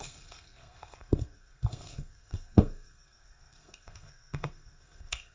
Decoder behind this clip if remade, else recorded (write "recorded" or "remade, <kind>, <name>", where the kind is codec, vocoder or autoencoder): remade, codec, SNAC